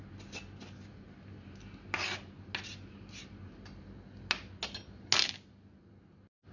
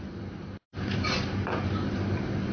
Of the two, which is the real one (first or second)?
first